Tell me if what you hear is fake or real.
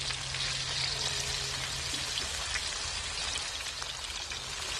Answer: real